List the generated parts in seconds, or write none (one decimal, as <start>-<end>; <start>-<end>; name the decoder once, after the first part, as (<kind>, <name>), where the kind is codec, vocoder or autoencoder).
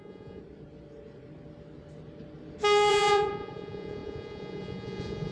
0.0-0.4 (vocoder, Vocos); 2.9-5.3